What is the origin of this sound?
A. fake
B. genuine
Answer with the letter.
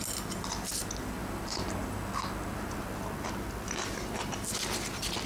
B